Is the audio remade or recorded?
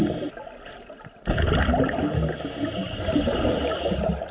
recorded